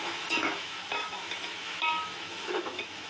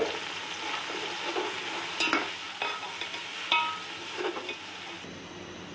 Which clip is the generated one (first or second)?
first